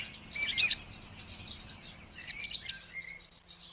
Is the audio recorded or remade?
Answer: recorded